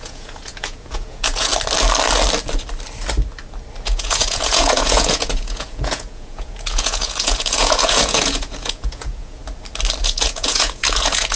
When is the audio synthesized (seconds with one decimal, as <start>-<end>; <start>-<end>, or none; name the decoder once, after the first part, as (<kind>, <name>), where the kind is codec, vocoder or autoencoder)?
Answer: 0.0-1.5 (vocoder, Vocos); 3.8-9.4; 10.0-11.4